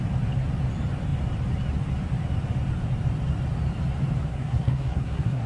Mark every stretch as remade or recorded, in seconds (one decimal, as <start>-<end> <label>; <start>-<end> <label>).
0.0-4.3 recorded; 4.3-5.5 remade